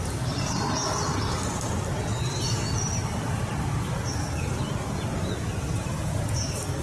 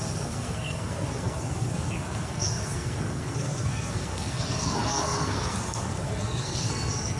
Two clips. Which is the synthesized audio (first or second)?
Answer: second